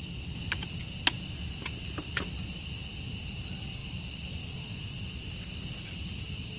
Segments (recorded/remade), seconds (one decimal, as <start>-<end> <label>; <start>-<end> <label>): 0.0-6.6 recorded